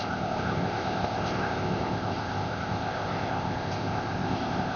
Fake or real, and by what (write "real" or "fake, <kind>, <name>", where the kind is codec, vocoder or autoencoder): fake, codec, ZipCodec